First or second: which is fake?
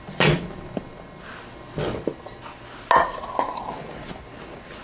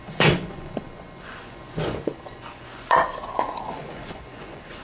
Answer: second